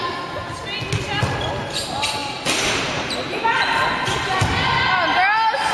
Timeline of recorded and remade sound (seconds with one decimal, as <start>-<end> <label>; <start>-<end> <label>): 0.0-5.7 recorded